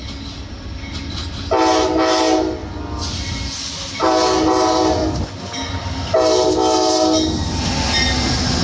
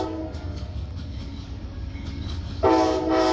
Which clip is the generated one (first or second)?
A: second